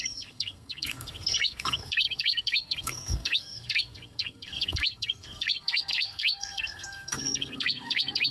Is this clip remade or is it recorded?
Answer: remade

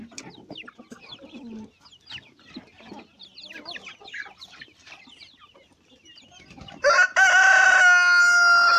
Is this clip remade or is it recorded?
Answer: recorded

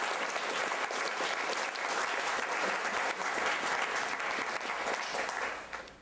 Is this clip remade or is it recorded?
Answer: recorded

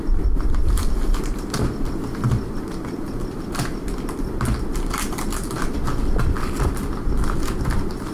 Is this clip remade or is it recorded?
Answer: recorded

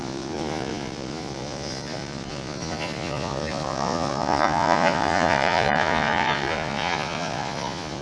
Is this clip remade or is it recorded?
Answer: remade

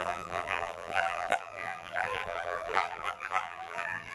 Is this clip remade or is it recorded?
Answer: remade